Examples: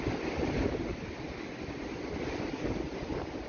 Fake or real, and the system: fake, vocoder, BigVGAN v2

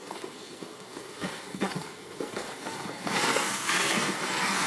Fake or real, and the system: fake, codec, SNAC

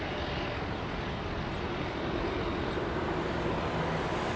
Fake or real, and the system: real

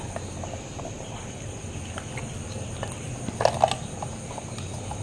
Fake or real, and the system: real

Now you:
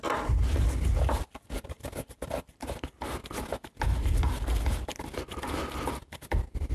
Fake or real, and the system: real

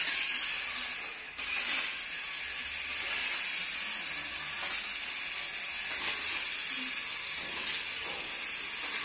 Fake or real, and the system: real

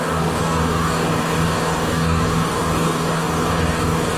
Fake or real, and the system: fake, codec, DAC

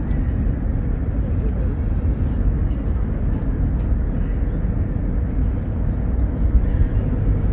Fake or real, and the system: real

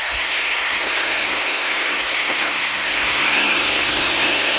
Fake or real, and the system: fake, codec, SNAC